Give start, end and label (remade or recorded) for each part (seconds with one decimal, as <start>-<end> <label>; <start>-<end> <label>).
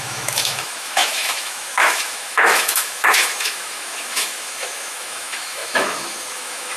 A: 0.0-6.8 remade